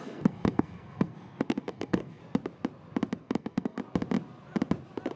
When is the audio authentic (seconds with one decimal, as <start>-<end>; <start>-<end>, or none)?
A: 2.2-3.2; 3.8-5.2